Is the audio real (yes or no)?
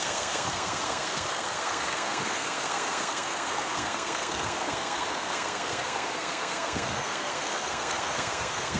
no